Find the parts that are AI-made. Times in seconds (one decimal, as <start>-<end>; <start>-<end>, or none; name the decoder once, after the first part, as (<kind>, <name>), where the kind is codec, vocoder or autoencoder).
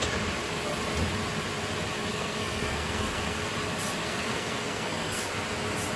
2.1-3.5 (codec, SNAC); 4.0-5.3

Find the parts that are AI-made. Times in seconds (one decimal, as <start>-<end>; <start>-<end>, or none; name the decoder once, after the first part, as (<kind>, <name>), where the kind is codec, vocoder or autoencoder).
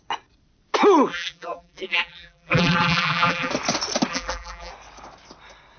1.1-3.5 (vocoder, BigVGAN v2); 4.1-4.7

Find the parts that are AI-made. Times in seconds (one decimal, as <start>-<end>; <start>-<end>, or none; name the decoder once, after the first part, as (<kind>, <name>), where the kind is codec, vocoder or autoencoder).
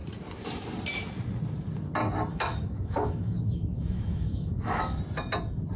2.3-5.0 (autoencoder, DAC-VAE)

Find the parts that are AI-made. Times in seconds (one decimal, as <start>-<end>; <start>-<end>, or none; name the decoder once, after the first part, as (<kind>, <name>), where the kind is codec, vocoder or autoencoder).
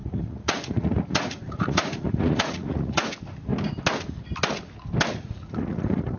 0.0-3.5 (vocoder, Vocos); 5.2-6.2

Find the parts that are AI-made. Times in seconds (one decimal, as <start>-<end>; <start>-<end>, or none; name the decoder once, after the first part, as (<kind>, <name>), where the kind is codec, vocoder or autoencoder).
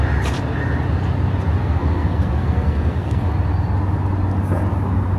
1.6-3.3 (codec, SNAC)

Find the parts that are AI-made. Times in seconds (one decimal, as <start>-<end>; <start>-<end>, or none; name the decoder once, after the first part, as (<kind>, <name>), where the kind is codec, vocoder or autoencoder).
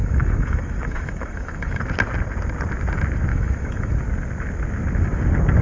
0.0-1.8 (autoencoder, DAC-VAE); 3.3-3.9